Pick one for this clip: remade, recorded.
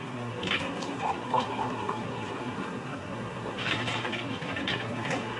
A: remade